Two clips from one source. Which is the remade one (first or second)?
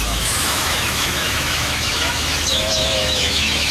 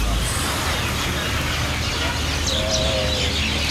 first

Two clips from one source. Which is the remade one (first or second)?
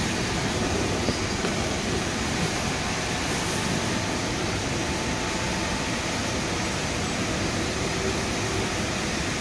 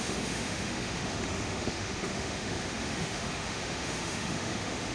second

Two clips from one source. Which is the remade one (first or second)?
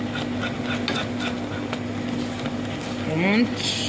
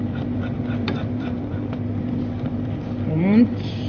second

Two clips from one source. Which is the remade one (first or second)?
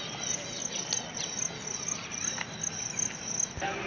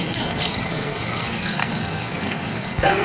second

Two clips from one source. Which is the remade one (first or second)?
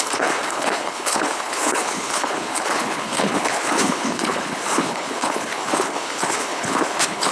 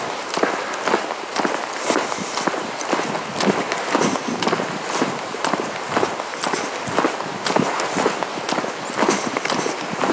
first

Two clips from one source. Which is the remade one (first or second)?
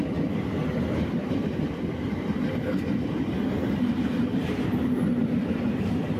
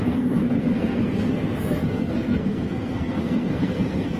second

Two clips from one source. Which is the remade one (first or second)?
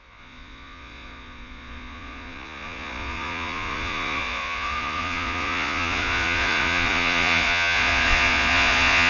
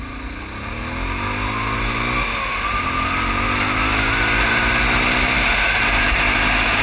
first